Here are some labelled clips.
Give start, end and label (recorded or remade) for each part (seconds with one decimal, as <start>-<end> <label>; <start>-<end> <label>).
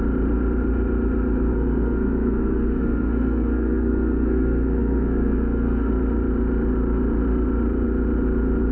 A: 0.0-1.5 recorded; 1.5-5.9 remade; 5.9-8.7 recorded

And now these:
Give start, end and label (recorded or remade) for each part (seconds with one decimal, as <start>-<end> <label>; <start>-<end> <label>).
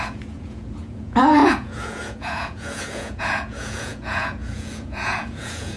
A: 0.0-5.8 remade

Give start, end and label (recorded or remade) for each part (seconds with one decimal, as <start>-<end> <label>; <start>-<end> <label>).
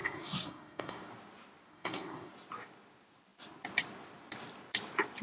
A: 0.0-1.1 remade; 1.1-1.7 recorded; 1.7-2.3 remade; 2.3-5.2 recorded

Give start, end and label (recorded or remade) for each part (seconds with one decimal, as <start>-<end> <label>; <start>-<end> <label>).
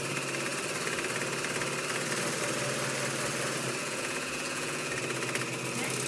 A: 0.0-3.8 recorded; 3.8-4.9 remade; 4.9-6.1 recorded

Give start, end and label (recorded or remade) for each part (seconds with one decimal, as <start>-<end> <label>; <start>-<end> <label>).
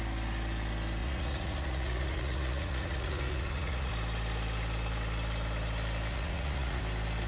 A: 0.0-1.0 recorded; 1.0-3.9 remade; 3.9-6.1 recorded; 6.1-6.8 remade; 6.8-7.3 recorded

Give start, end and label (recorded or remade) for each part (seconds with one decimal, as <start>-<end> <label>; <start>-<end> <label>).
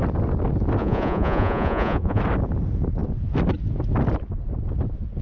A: 0.0-0.8 recorded; 0.8-2.2 remade; 2.2-5.2 recorded